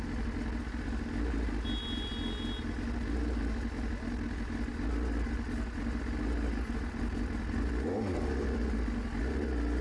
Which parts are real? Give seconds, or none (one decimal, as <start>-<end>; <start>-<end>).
0.0-9.8